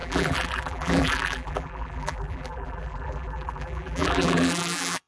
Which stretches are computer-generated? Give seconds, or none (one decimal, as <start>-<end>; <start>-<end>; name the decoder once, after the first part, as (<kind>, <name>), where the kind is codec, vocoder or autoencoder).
0.0-5.1 (vocoder, BigVGAN v2)